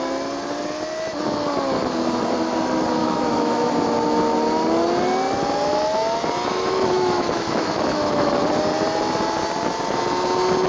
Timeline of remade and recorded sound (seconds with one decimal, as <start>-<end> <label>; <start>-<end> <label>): 0.0-3.0 recorded; 3.0-3.7 remade; 3.7-6.5 recorded; 6.5-8.3 remade; 8.3-10.7 recorded